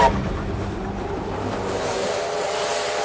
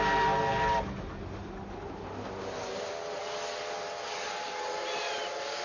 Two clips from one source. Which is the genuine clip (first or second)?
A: second